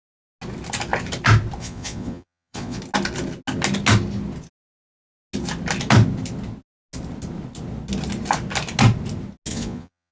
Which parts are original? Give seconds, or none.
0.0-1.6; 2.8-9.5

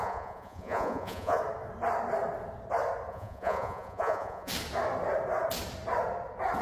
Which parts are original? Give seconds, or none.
1.4-3.1; 4.5-6.6

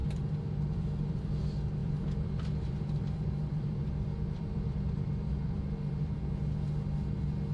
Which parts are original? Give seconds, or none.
1.1-1.8; 6.3-7.5

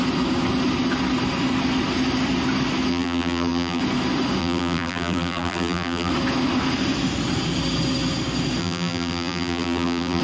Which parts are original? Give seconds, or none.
0.0-2.9; 3.8-4.4; 6.1-8.6